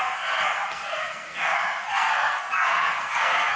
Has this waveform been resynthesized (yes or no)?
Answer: yes